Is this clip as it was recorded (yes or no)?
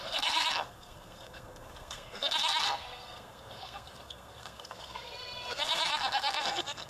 no